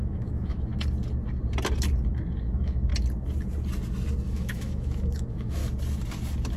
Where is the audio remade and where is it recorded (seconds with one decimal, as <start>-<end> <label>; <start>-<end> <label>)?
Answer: 0.0-0.7 remade; 0.7-2.4 recorded; 2.4-2.9 remade; 2.9-4.3 recorded; 4.3-5.6 remade; 5.6-6.6 recorded